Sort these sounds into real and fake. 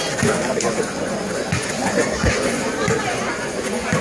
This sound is fake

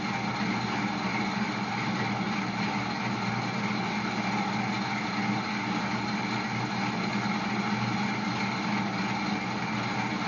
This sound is real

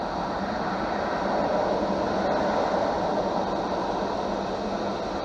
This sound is real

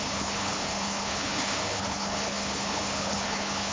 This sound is fake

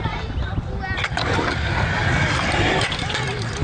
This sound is real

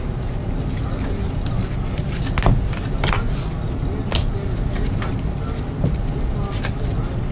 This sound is real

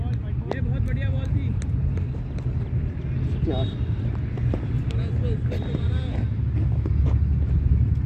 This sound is real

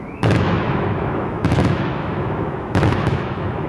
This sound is fake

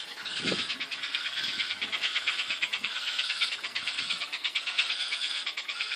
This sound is fake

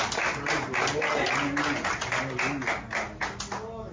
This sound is real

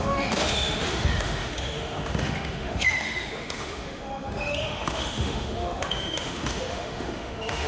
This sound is fake